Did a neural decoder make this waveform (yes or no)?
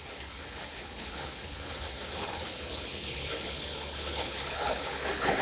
yes